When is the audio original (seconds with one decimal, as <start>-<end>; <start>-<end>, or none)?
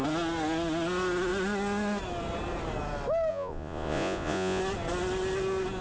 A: 0.0-3.3; 4.6-5.8